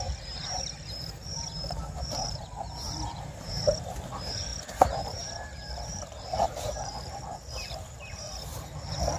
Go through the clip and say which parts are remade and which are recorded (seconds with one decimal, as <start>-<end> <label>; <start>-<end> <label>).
0.0-9.2 remade